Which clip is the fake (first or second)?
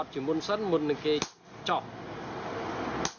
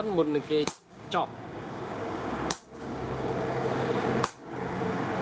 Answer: second